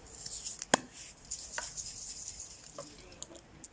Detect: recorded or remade recorded